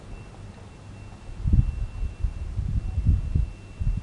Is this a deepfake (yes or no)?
no